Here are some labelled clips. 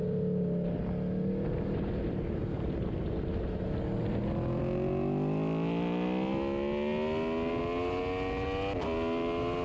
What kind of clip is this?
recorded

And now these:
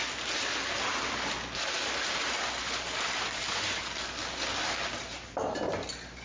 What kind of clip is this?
recorded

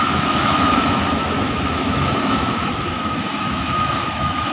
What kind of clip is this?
remade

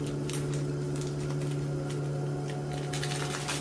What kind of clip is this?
recorded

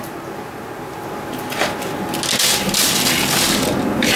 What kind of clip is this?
recorded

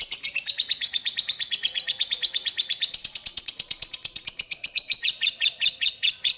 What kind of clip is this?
remade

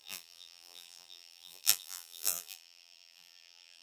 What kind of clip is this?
remade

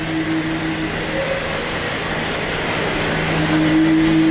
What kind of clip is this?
recorded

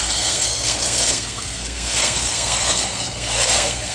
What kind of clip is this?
remade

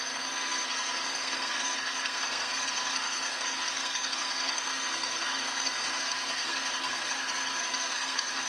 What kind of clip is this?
remade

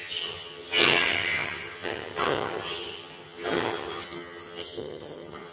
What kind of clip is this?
remade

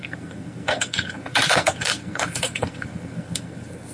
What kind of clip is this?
remade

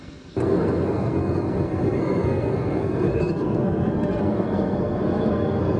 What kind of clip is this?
remade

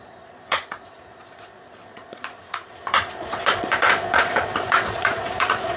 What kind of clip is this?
remade